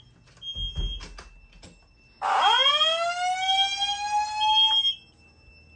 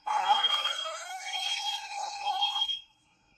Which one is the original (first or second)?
first